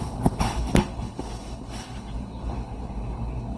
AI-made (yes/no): yes